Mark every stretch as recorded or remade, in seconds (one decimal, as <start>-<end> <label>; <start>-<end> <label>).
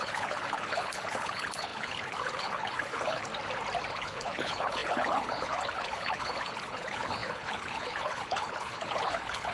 0.0-3.3 remade; 3.3-3.9 recorded; 3.9-9.5 remade